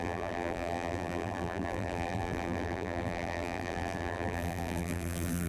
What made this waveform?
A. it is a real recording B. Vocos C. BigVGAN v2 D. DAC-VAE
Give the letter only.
C